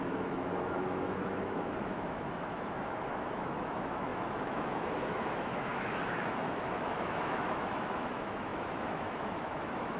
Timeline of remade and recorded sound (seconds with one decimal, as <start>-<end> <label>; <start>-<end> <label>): 0.0-10.0 remade